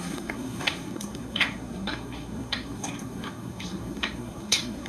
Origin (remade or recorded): remade